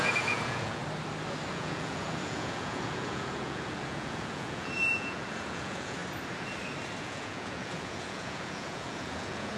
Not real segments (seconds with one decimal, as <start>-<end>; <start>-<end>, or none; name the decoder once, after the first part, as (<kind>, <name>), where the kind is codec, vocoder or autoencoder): 0.0-0.8 (vocoder, Vocos); 1.5-6.0; 7.0-9.6